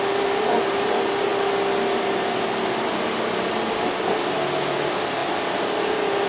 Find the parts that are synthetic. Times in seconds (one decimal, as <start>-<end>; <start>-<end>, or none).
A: none